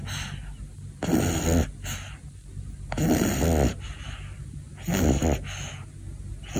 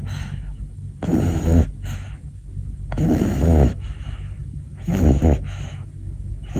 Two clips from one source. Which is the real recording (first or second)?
first